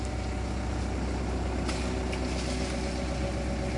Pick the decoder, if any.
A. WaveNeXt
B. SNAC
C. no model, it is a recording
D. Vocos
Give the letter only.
C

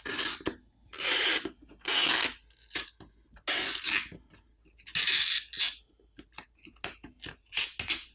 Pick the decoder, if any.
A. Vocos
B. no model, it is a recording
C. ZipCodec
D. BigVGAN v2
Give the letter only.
B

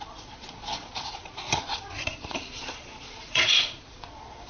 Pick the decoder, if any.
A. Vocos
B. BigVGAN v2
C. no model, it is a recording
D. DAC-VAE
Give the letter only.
A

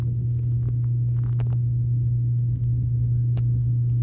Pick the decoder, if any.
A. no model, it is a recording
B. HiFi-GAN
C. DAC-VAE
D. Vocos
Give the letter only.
A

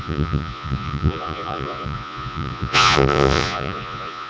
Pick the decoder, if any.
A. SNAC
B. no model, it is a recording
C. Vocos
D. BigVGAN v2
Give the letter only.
C